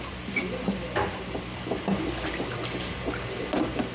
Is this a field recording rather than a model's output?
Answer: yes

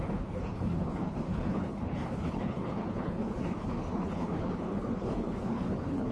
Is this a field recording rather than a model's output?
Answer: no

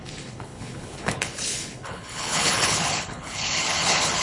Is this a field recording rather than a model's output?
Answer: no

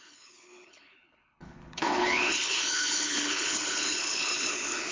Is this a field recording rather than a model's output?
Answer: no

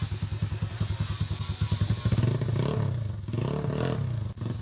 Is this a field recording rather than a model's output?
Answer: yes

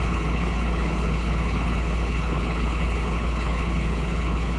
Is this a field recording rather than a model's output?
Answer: no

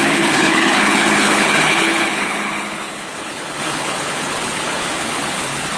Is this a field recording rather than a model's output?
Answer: no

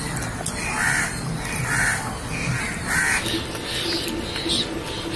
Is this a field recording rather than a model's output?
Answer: yes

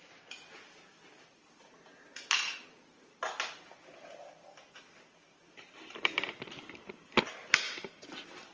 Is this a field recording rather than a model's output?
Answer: yes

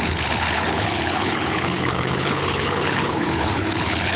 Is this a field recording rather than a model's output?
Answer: no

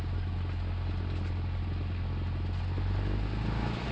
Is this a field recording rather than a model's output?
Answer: yes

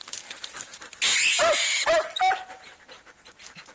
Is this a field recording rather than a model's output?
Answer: yes